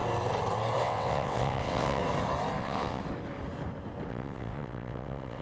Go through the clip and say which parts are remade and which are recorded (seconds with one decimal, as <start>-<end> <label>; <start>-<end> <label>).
0.0-0.8 recorded; 0.8-2.0 remade; 2.0-2.6 recorded; 2.6-3.0 remade; 3.0-4.1 recorded; 4.1-5.4 remade